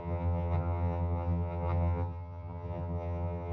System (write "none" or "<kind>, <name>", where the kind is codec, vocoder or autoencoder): vocoder, HiFi-GAN